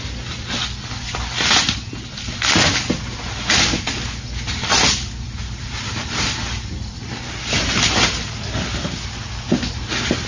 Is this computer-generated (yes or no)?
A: no